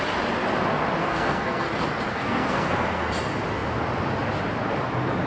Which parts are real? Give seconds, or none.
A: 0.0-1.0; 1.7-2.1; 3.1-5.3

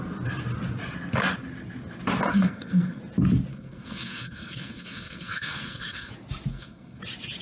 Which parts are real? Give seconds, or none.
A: 0.0-2.3; 3.0-3.5; 6.1-6.5; 7.0-7.4